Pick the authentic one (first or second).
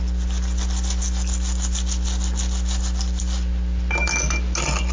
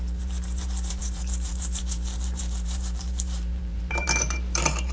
first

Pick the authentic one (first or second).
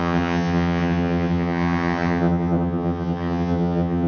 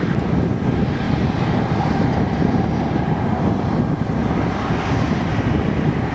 second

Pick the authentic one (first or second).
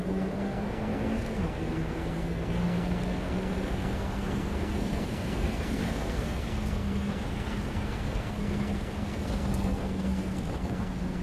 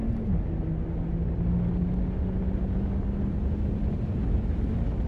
second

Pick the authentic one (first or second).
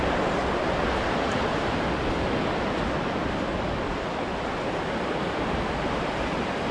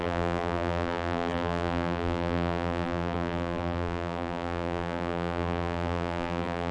first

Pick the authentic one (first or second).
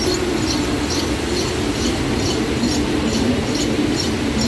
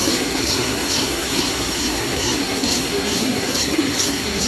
first